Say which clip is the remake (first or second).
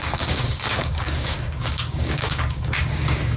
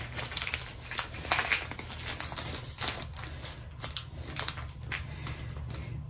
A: first